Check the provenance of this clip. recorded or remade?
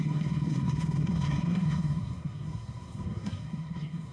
remade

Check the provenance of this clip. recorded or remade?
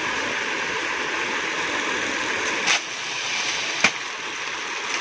recorded